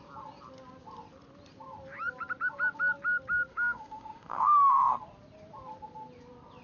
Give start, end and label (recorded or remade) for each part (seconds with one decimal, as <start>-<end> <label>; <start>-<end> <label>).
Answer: 0.0-3.5 recorded; 3.5-5.0 remade; 5.0-6.6 recorded